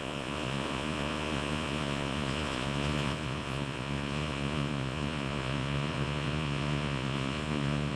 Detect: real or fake fake